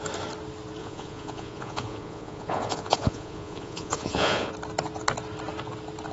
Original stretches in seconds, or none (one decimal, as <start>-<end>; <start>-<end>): 0.0-0.8; 4.5-6.1